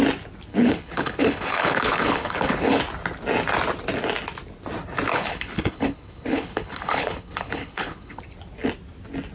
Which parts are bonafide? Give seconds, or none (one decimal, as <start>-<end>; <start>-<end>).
0.0-0.5; 2.8-5.1; 8.2-9.3